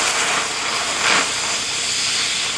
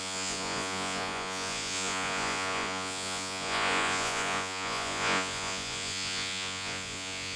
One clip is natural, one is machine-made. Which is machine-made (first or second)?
second